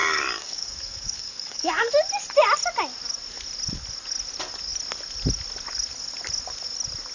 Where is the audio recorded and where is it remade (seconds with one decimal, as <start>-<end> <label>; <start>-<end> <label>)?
0.0-1.9 remade; 1.9-7.1 recorded